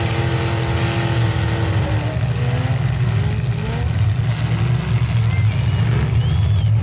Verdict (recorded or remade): recorded